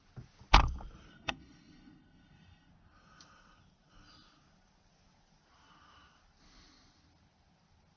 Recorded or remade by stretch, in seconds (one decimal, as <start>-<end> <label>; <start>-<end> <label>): 0.0-1.1 recorded; 1.1-2.7 remade; 2.7-8.0 recorded